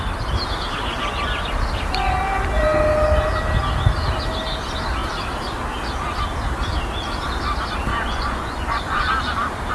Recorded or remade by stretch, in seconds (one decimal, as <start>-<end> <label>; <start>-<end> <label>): 0.0-7.9 recorded; 7.9-9.1 remade; 9.1-9.7 recorded